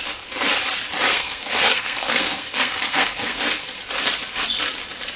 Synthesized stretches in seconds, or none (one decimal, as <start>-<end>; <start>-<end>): 1.1-3.8